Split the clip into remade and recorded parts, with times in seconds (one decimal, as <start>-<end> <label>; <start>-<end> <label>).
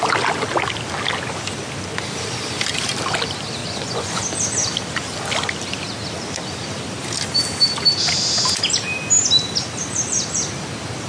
0.0-3.6 recorded; 3.6-4.2 remade; 4.2-11.1 recorded